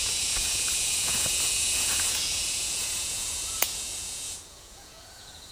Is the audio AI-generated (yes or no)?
yes